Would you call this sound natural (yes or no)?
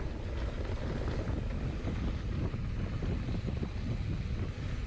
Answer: yes